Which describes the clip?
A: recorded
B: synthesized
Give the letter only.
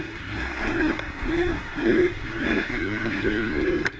B